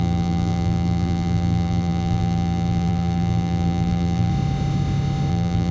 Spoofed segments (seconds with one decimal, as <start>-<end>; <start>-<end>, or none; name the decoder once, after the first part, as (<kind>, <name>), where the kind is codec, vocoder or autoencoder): 0.0-4.3 (vocoder, BigVGAN v2); 5.3-5.7